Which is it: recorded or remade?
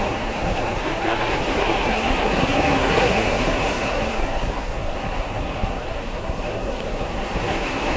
remade